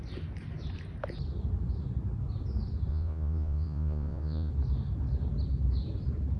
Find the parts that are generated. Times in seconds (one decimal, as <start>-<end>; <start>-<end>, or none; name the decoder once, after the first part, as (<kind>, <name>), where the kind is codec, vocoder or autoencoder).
2.9-4.5 (vocoder, Vocos)